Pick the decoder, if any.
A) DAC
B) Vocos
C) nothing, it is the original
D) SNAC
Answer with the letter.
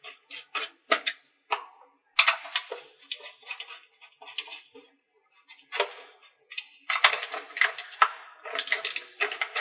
C